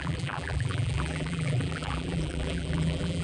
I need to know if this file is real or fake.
fake